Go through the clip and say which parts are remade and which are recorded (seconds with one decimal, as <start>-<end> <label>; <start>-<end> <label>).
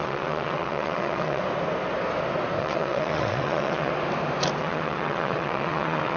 0.0-1.4 remade; 1.4-2.6 recorded; 2.6-3.9 remade; 3.9-4.6 recorded; 4.6-6.2 remade